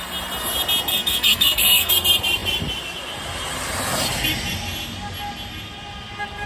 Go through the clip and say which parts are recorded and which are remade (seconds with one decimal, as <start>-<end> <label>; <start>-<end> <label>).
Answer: 0.0-0.9 recorded; 0.9-1.9 remade; 1.9-6.5 recorded